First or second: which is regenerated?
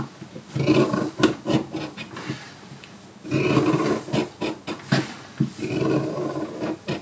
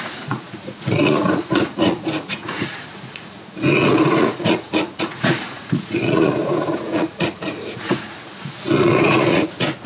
second